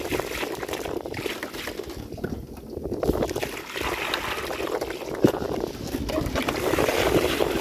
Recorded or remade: recorded